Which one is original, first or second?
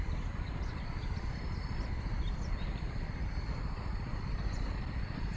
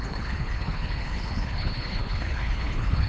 first